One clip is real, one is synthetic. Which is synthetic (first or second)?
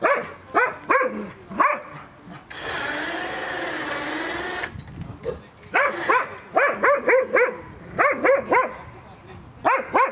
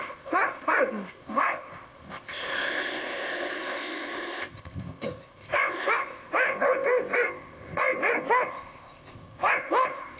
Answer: second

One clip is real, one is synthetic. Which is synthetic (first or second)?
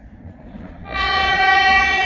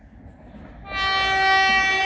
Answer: first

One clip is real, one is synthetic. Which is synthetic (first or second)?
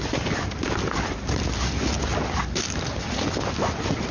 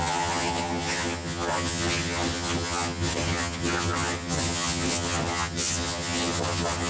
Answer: second